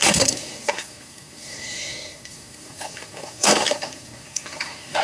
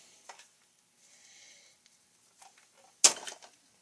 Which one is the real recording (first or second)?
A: second